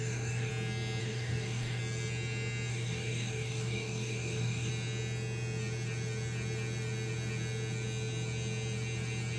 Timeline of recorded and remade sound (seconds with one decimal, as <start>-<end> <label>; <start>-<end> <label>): 0.0-0.5 remade; 0.5-1.0 recorded; 1.0-1.8 remade; 1.8-2.7 recorded; 2.7-4.7 remade; 4.7-9.4 recorded